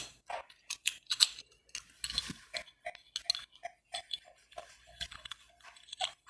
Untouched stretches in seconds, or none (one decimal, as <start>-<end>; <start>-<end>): 1.6-3.8

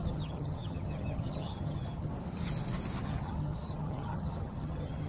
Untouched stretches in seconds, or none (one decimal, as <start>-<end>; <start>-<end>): 2.1-3.0

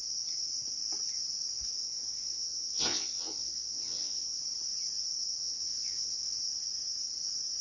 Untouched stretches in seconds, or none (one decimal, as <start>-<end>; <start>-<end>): 0.0-1.8; 4.4-5.4; 6.3-7.6

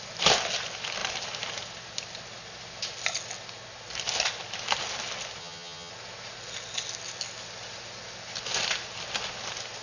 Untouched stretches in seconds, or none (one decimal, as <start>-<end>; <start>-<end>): 0.0-5.4; 5.9-9.8

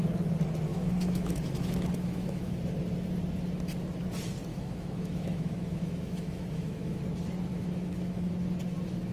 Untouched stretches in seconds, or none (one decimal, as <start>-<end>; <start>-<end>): 0.0-0.7; 2.6-4.5; 7.0-7.5; 8.3-9.1